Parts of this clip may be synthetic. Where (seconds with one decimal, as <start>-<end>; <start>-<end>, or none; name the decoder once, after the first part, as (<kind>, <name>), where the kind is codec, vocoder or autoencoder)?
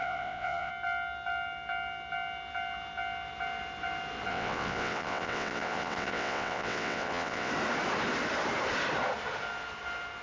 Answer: 0.0-0.7 (vocoder, WaveNeXt); 4.3-7.5